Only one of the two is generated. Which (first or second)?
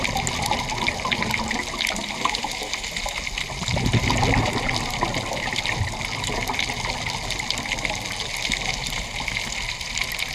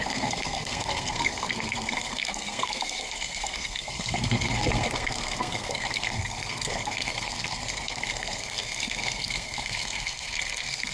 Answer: second